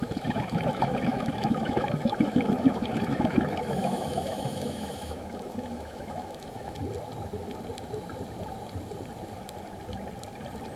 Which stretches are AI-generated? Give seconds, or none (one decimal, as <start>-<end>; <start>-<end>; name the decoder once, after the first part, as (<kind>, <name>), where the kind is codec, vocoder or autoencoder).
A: 0.0-6.8 (autoencoder, DAC-VAE)